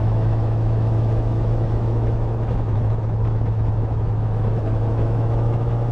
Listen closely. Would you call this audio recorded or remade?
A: remade